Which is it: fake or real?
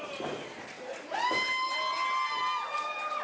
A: real